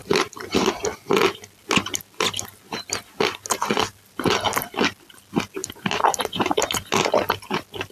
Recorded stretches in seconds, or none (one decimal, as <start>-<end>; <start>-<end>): 0.0-5.6; 6.6-7.9